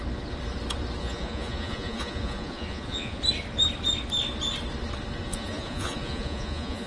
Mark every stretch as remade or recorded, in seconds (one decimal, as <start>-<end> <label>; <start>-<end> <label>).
0.0-1.0 recorded; 1.0-3.2 remade; 3.2-5.3 recorded; 5.3-6.9 remade